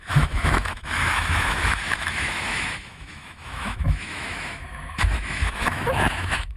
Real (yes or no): no